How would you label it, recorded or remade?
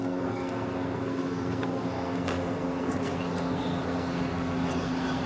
remade